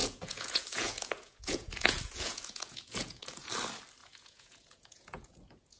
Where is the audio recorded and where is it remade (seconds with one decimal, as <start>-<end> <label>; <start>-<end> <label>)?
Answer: 0.0-3.5 remade; 3.5-4.0 recorded; 4.0-5.8 remade